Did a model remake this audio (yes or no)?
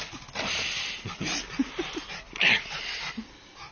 no